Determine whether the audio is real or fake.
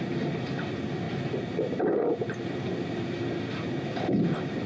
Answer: real